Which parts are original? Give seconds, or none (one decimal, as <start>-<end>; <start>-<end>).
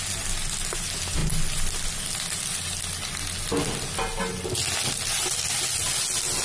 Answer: 0.0-6.4